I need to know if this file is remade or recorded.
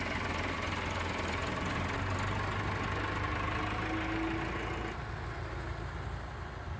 recorded